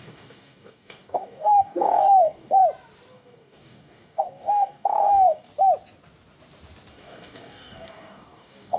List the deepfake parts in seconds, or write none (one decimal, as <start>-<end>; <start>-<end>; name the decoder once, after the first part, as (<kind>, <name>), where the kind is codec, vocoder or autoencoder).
0.0-2.6 (codec, DAC); 3.1-5.5; 6.9-8.8